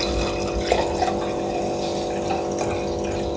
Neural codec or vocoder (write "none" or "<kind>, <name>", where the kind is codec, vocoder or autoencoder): none